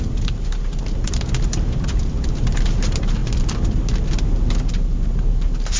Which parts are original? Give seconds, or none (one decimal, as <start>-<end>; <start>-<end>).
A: 3.2-4.1